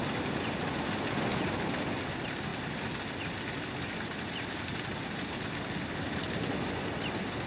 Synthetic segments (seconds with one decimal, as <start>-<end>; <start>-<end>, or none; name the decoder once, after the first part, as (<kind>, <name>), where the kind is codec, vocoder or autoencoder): none